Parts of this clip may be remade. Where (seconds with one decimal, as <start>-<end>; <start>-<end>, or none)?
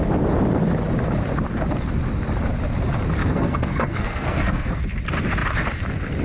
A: 3.2-4.8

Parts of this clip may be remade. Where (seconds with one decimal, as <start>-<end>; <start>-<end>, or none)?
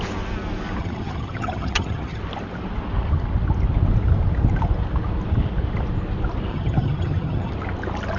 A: 0.8-2.2; 6.5-7.5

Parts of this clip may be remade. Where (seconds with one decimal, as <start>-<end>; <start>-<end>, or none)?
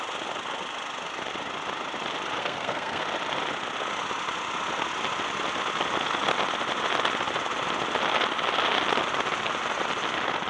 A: 2.4-3.0